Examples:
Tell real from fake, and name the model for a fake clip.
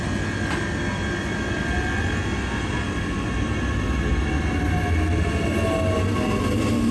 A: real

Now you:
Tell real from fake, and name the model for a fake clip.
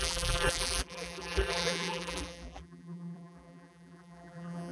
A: fake, vocoder, BigVGAN v2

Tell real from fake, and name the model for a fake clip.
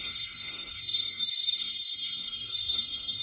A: fake, codec, SNAC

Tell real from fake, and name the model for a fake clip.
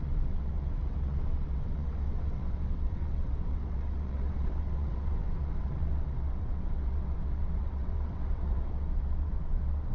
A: fake, vocoder, WaveNeXt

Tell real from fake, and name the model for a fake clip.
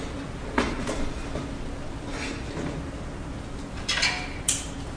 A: real